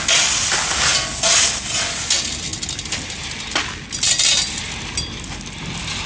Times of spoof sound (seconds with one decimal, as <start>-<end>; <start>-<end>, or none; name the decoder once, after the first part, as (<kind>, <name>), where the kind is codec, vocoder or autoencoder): none